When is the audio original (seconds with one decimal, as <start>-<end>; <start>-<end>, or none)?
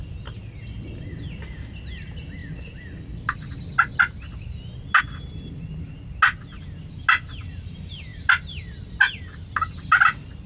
0.0-10.5